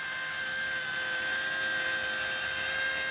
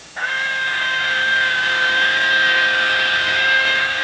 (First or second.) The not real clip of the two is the second